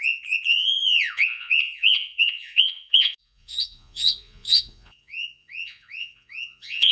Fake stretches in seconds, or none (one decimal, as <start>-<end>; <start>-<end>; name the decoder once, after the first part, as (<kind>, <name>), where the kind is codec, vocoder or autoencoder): 0.0-6.9 (vocoder, Vocos)